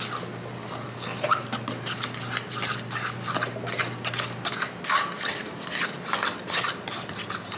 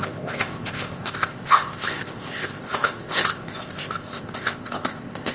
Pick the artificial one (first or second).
second